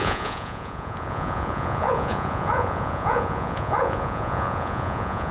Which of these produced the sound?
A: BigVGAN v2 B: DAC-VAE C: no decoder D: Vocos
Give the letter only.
D